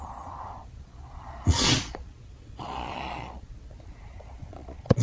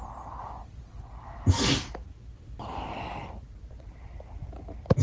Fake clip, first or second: first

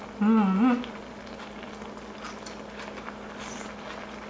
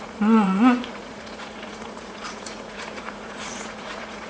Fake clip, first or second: second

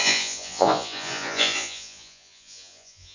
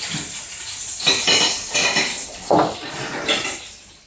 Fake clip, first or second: first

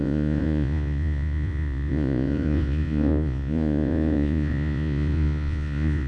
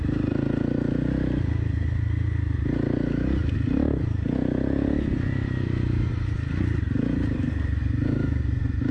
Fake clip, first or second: first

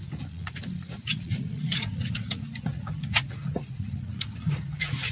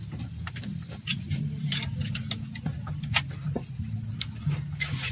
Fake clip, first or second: first